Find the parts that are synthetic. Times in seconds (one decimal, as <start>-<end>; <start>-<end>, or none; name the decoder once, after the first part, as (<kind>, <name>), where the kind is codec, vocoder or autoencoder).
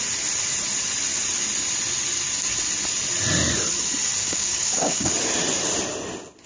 4.2-5.1 (codec, DAC)